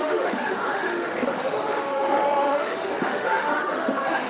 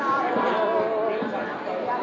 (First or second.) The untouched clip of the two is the second